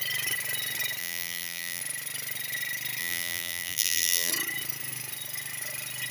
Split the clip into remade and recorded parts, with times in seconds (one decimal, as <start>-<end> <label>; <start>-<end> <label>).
0.0-1.0 recorded; 1.0-1.8 remade; 1.8-3.0 recorded; 3.0-4.3 remade; 4.3-6.1 recorded